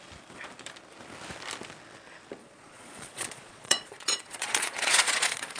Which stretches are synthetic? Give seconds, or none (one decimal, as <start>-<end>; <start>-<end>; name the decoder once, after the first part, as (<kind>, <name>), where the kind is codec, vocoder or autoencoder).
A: 2.4-5.6 (vocoder, Vocos)